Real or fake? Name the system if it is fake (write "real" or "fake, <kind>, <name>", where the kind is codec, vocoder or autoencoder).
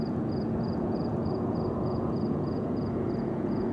fake, vocoder, Vocos